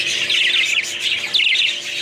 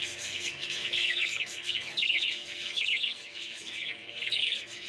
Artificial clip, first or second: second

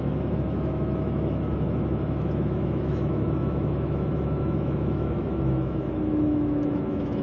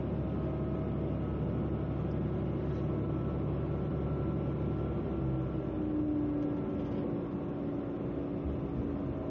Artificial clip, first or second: first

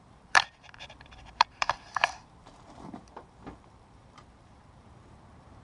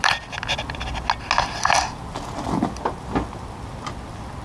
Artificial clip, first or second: first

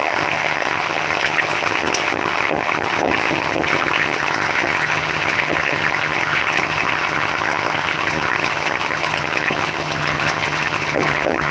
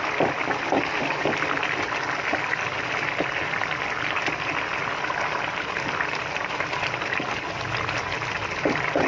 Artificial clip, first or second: first